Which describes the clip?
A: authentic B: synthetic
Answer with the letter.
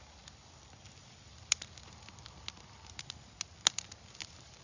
A